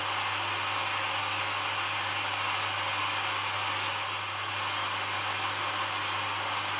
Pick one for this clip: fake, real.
real